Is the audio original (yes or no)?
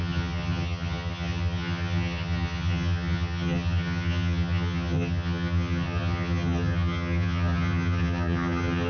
no